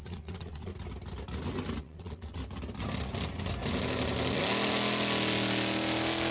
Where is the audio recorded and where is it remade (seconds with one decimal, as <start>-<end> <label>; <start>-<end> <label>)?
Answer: 0.0-0.7 remade; 0.7-1.8 recorded; 1.8-2.4 remade; 2.4-6.3 recorded